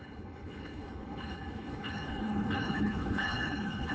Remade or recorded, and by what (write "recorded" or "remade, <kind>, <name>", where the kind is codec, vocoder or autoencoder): remade, codec, HILCodec